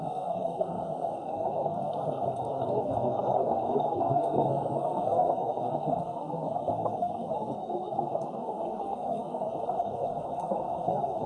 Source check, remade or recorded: remade